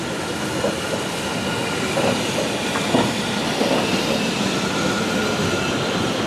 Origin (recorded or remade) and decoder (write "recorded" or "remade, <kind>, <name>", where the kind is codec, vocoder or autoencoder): recorded